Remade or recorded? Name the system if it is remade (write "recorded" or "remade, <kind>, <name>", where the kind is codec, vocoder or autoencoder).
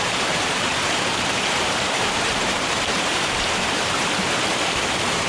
remade, vocoder, BigVGAN v2